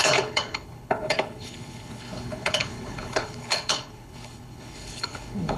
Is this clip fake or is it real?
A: fake